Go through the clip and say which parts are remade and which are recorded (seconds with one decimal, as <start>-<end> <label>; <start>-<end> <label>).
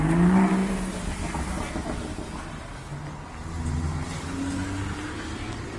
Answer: 0.0-5.8 recorded